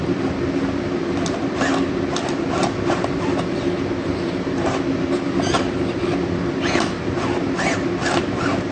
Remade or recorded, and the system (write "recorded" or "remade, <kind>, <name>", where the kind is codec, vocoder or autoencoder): recorded